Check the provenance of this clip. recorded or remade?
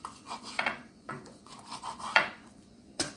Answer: remade